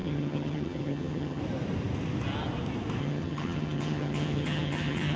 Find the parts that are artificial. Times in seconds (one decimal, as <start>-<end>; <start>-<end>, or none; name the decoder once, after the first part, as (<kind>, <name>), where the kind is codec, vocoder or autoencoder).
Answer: 0.0-1.4 (vocoder, HiFi-GAN); 3.0-5.2